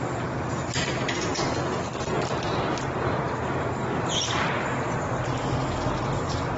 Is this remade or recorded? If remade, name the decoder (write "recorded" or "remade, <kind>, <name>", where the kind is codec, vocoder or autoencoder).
recorded